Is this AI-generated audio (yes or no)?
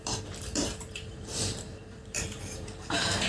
yes